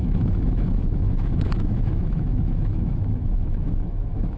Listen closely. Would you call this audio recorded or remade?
remade